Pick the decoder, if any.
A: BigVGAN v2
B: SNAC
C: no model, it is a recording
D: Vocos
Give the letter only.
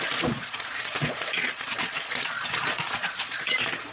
D